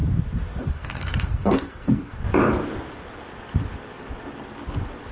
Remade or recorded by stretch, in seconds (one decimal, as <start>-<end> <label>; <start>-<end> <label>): 0.0-0.6 recorded; 0.6-2.2 remade; 2.2-5.1 recorded